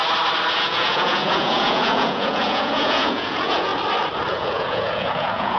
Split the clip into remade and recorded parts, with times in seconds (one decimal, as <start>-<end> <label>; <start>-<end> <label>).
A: 0.0-0.5 recorded; 0.5-3.7 remade; 3.7-4.3 recorded; 4.3-5.6 remade